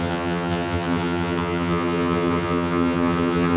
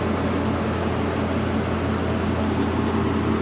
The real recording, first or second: second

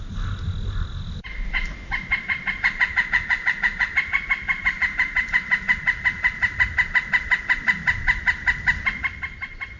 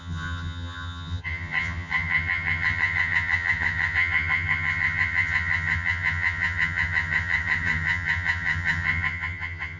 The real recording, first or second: first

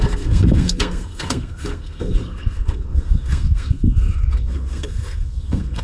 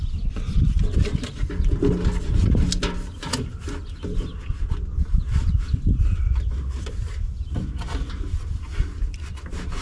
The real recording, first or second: second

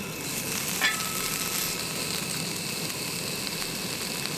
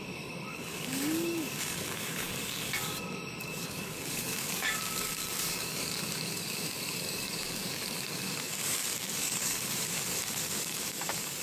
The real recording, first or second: first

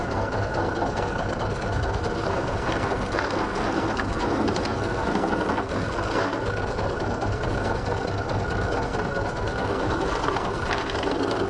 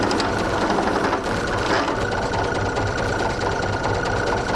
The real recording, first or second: second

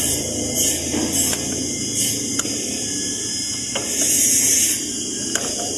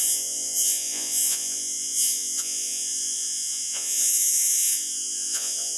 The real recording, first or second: first